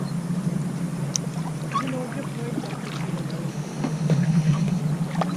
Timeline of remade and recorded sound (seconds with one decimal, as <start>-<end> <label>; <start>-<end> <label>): 0.0-3.5 recorded; 3.5-4.8 remade; 4.8-5.4 recorded